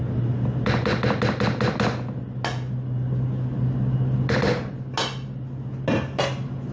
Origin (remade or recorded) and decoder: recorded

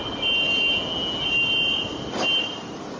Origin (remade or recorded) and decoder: recorded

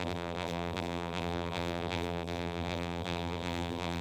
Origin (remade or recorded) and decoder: remade, vocoder, BigVGAN v2